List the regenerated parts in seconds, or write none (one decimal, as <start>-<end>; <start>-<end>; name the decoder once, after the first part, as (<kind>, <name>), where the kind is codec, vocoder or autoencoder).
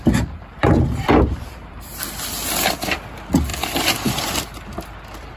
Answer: 0.6-2.0 (vocoder, BigVGAN v2); 3.5-4.1